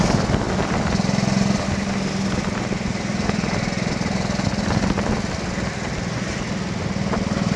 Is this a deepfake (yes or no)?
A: no